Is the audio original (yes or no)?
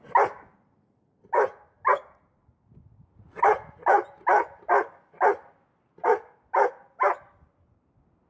yes